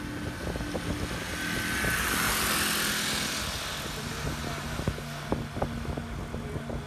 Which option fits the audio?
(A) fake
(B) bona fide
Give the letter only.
B